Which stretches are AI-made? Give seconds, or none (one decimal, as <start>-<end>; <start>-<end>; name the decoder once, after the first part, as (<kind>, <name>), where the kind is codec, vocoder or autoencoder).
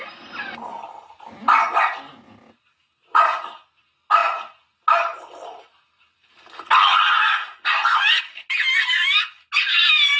none